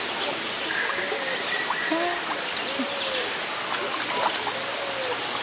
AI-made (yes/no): no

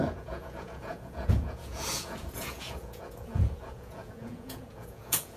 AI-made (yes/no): yes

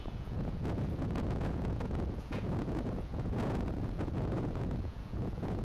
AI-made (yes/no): yes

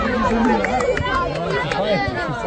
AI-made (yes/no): no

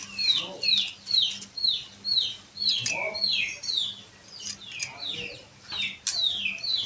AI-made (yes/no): no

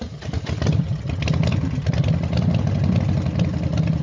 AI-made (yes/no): no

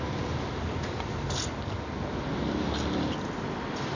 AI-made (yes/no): no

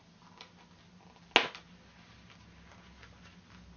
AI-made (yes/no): no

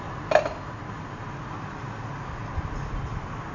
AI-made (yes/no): no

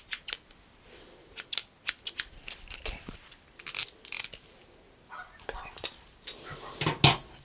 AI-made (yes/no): no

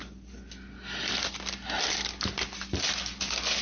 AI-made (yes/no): no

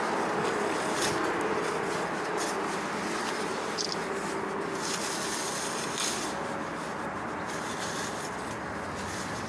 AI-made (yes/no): no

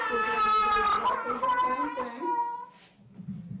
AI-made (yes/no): no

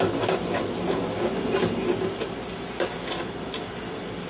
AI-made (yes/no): no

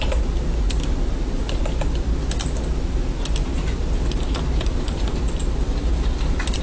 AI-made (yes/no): no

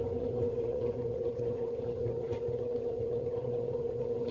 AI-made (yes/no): yes